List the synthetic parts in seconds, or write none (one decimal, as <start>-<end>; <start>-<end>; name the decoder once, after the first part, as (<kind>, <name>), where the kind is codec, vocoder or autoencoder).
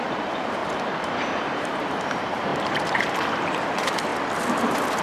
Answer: 0.0-0.6 (vocoder, BigVGAN v2); 1.5-4.1